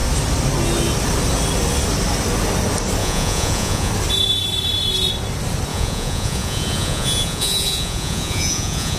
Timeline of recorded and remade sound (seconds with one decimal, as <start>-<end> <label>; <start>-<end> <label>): 0.0-3.0 recorded; 3.0-3.9 remade; 3.9-5.7 recorded; 5.7-9.0 remade